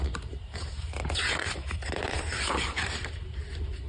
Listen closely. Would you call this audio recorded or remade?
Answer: remade